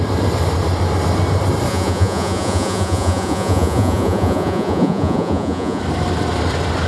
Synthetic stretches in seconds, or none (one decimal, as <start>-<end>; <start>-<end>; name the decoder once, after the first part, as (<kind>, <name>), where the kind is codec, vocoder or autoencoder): 1.7-5.8 (vocoder, Vocos)